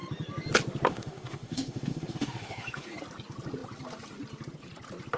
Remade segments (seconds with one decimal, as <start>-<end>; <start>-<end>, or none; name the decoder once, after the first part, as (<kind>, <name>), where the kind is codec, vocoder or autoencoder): 0.9-2.9 (autoencoder, DAC-VAE)